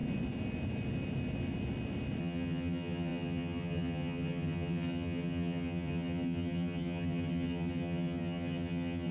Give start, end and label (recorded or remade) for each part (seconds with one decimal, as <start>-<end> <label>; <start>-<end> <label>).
0.0-2.2 recorded; 2.2-9.1 remade